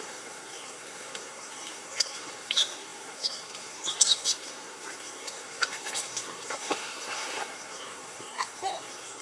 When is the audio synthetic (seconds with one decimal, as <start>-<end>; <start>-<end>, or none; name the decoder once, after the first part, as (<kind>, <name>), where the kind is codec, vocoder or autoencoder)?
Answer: 0.0-9.2 (codec, SNAC)